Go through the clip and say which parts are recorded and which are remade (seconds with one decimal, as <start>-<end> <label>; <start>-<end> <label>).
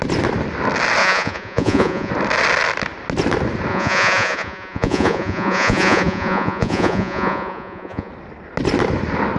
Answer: 0.0-1.0 recorded; 1.0-2.1 remade; 2.1-3.7 recorded; 3.7-8.1 remade; 8.1-9.4 recorded